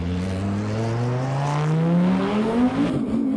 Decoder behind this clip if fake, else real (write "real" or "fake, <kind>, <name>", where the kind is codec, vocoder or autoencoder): real